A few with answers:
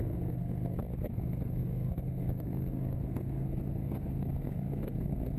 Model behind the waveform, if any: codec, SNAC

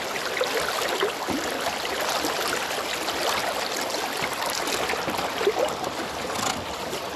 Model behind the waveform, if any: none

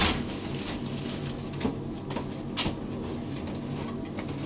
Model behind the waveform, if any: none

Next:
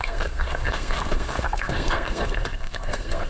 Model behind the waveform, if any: codec, SNAC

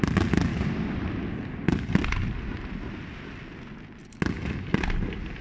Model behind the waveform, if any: none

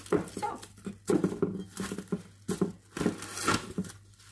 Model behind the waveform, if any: none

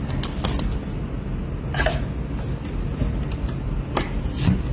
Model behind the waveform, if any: none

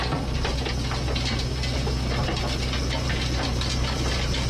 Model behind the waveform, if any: none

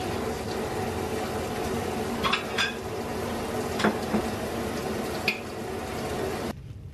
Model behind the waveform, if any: none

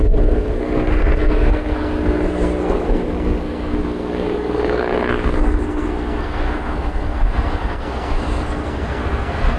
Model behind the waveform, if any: codec, SNAC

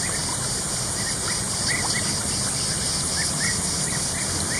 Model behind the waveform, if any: none